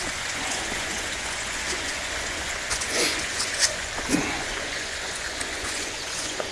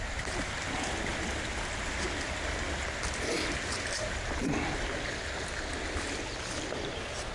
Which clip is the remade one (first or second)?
first